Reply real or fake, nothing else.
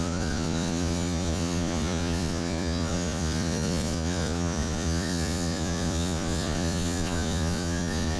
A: fake